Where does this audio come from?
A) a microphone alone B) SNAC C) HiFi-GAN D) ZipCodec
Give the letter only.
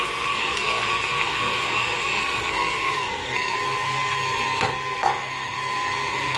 B